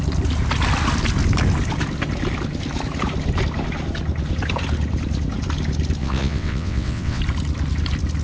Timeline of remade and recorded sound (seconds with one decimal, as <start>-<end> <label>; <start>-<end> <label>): 0.0-6.0 recorded; 6.0-7.2 remade; 7.2-8.2 recorded